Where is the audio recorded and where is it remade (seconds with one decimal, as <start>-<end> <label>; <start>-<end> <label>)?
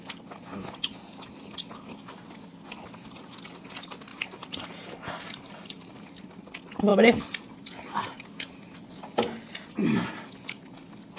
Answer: 0.0-4.1 recorded; 4.1-6.3 remade; 6.3-11.2 recorded